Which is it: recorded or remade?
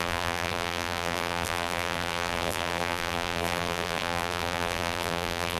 remade